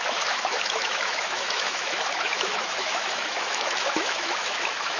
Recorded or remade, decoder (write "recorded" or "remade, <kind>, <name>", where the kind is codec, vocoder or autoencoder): remade, autoencoder, DAC-VAE